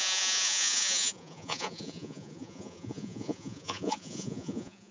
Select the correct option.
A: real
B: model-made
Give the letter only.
B